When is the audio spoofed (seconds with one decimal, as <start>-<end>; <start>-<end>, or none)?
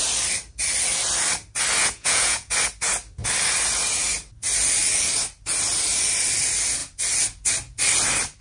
1.8-2.5